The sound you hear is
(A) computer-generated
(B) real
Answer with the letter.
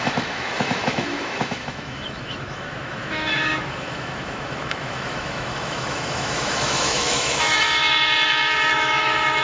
A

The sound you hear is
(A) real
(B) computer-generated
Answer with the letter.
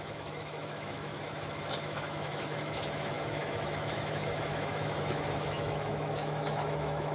B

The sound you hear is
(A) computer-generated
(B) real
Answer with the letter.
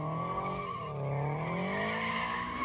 B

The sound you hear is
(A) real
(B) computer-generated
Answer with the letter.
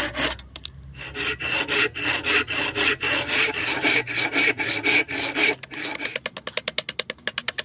A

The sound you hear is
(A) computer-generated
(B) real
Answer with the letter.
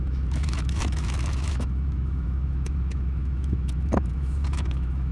A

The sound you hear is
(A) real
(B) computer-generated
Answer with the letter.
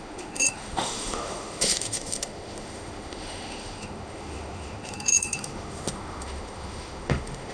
B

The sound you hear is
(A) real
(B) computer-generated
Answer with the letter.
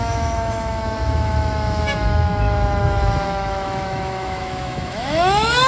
B